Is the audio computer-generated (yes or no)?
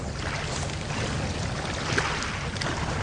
no